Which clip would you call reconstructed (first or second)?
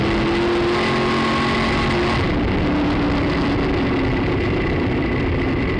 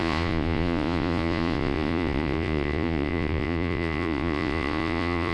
second